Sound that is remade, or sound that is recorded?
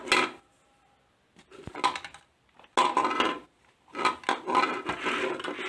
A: recorded